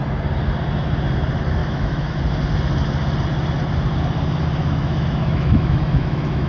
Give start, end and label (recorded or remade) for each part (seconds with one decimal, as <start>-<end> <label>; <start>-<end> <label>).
0.0-1.6 recorded; 1.6-2.2 remade; 2.2-4.6 recorded; 4.6-6.5 remade

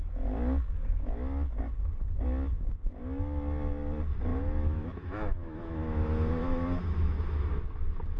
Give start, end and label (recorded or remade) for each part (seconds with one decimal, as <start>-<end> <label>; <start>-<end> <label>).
0.0-4.3 recorded; 4.3-7.5 remade; 7.5-8.2 recorded